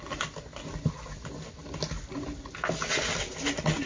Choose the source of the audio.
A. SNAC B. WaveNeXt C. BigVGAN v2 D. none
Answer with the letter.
D